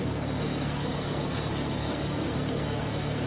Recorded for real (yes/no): no